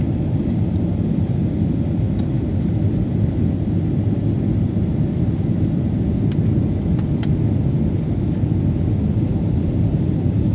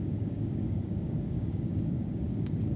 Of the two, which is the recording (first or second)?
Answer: first